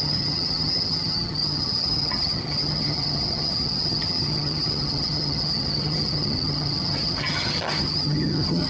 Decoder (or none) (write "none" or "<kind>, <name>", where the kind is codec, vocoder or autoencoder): vocoder, HiFi-GAN